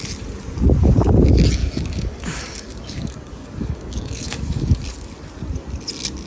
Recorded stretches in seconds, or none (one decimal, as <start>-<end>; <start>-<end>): 0.0-1.6; 4.8-6.3